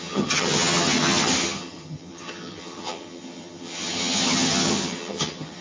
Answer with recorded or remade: remade